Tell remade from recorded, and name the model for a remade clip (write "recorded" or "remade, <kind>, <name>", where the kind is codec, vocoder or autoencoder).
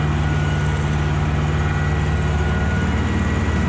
recorded